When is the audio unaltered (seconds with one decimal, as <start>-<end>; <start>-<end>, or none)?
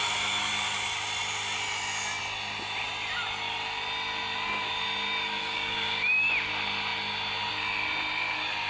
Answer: 0.0-5.4; 6.3-8.7